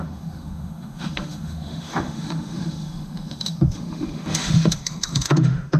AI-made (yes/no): yes